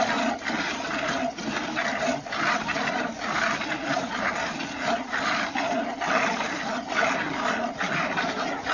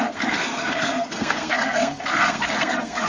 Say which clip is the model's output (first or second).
second